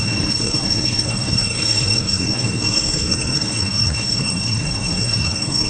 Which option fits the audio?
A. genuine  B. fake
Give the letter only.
B